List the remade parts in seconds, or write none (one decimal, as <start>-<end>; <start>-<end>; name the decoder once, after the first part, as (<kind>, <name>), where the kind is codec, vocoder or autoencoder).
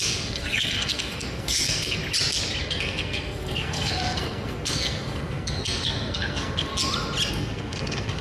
0.0-2.0 (codec, SNAC); 2.6-6.7; 7.3-8.2